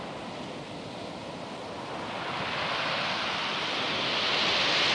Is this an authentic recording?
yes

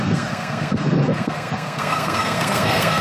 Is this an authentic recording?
no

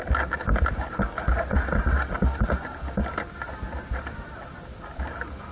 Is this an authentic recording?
yes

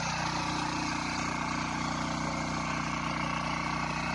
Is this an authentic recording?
yes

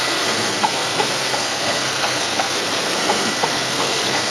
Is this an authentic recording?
no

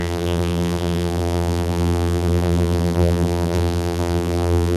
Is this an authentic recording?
no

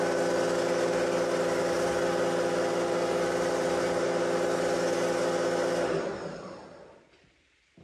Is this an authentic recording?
yes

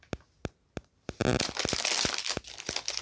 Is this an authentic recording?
yes